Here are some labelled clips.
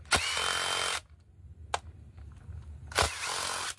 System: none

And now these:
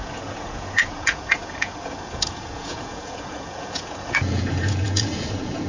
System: vocoder, Vocos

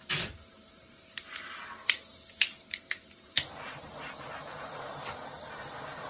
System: vocoder, BigVGAN v2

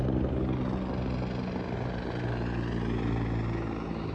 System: none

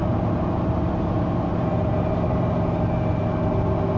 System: none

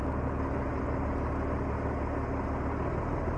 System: none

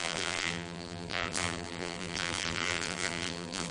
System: vocoder, BigVGAN v2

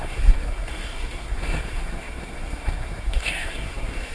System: codec, SNAC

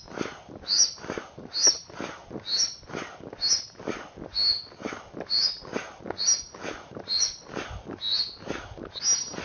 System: none